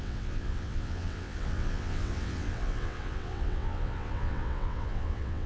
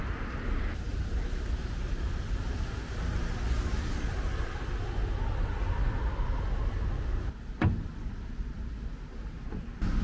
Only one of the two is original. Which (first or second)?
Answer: second